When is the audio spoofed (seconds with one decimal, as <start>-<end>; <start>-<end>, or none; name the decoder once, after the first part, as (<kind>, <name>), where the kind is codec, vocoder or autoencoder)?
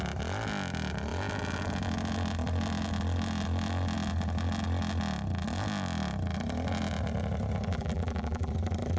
7.7-8.5 (vocoder, BigVGAN v2)